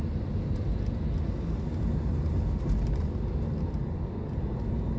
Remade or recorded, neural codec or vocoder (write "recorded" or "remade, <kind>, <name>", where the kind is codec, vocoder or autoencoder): recorded